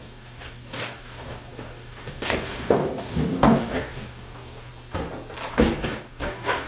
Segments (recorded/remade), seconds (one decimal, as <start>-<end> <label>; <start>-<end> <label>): 0.0-4.7 remade; 4.7-5.5 recorded; 5.5-6.7 remade